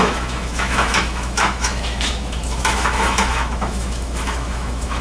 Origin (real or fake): fake